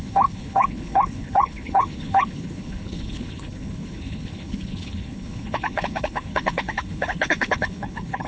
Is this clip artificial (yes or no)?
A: yes